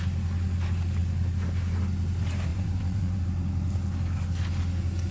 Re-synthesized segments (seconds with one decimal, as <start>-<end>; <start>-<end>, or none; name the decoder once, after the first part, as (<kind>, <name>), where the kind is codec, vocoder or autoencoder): 2.5-3.2 (vocoder, Vocos)